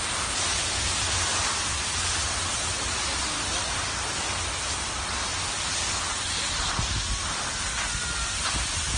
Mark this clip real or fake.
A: real